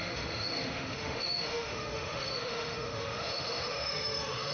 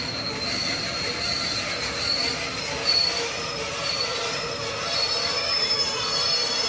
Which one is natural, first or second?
second